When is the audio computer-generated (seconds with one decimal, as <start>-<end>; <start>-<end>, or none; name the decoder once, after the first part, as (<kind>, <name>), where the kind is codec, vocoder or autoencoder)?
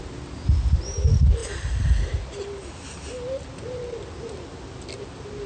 none